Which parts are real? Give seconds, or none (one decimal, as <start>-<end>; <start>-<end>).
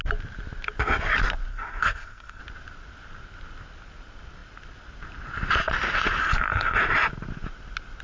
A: 0.0-1.5; 2.4-6.2; 6.8-8.0